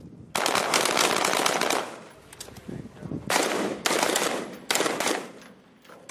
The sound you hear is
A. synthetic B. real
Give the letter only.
B